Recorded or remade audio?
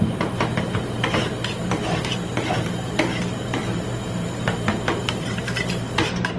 remade